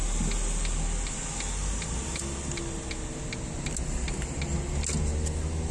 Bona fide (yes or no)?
yes